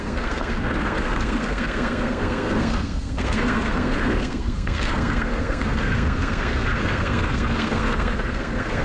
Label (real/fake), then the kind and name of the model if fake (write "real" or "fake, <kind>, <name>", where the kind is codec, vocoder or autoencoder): fake, codec, SNAC